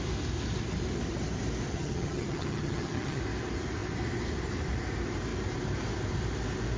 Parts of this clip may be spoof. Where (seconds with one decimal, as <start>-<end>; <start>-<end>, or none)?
1.7-3.2

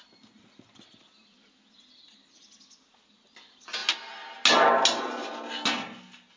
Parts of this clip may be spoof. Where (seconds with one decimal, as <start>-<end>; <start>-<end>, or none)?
none

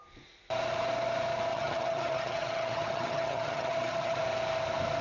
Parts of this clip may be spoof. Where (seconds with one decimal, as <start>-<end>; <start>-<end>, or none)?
1.5-4.2

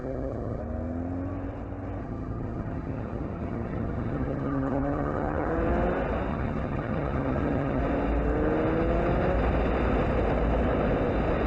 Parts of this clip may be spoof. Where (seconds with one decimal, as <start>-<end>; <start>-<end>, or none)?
0.0-0.6; 2.0-5.5; 6.3-7.8

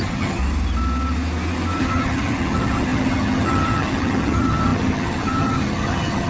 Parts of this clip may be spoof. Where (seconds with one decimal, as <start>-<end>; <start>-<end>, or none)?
0.0-0.4; 1.8-6.3

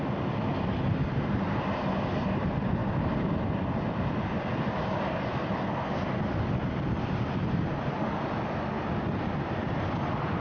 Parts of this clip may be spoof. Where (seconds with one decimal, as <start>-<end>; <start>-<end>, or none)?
none